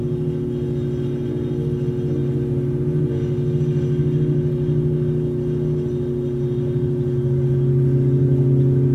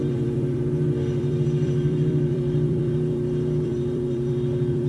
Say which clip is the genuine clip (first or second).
first